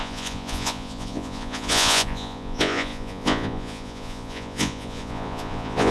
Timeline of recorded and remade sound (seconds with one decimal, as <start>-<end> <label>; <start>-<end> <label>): 0.0-5.9 remade